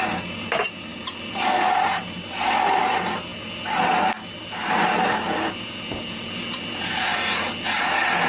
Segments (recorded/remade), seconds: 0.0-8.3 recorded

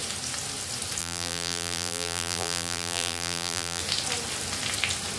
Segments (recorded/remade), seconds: 0.0-1.0 recorded; 1.0-3.8 remade; 3.8-5.2 recorded

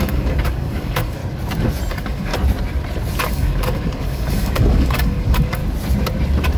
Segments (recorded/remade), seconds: 0.0-1.2 remade; 1.2-1.9 recorded; 1.9-2.3 remade; 2.3-3.3 recorded; 3.3-5.6 remade; 5.6-6.6 recorded

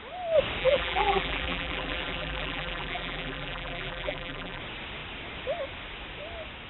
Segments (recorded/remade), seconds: 0.0-0.6 recorded; 0.6-4.6 remade; 4.6-6.7 recorded

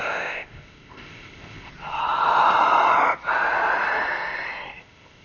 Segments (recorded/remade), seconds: 0.0-1.7 remade; 1.7-4.8 recorded; 4.8-5.2 remade

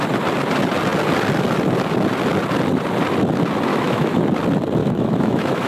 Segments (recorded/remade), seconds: 0.0-3.7 recorded; 3.7-4.2 remade; 4.2-4.8 recorded; 4.8-5.7 remade